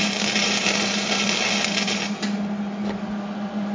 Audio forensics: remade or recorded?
recorded